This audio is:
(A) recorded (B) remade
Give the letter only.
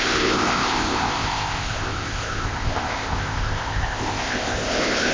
B